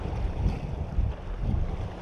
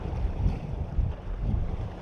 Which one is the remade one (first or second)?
second